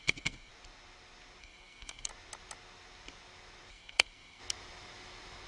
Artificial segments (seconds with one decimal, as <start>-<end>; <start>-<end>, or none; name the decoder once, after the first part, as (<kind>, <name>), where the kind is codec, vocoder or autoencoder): 0.0-0.5 (codec, SNAC); 1.4-2.1; 3.7-4.4